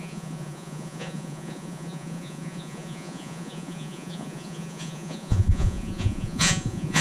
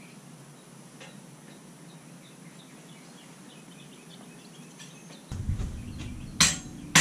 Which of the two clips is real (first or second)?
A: second